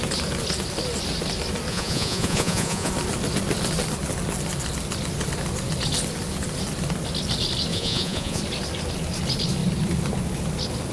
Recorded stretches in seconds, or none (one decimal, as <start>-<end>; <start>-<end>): 0.0-1.7; 2.9-7.7; 8.4-10.9